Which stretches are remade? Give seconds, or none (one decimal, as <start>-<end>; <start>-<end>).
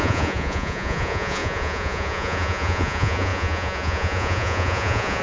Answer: 0.0-5.2